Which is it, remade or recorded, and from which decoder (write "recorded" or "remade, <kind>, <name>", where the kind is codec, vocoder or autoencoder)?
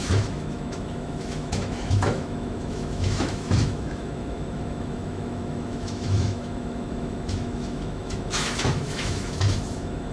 remade, autoencoder, DAC-VAE